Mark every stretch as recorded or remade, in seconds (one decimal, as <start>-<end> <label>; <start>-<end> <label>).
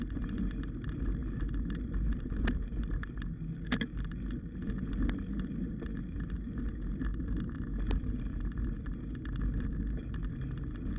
0.0-11.0 recorded